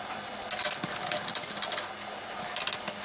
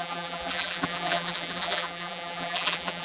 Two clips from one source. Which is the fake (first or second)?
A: second